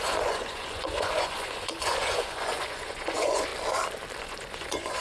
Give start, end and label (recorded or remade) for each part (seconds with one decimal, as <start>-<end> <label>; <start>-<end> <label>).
0.0-3.5 remade; 3.5-4.2 recorded; 4.2-5.0 remade